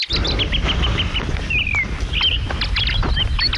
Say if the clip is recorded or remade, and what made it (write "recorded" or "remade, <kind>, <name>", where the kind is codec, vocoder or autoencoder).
recorded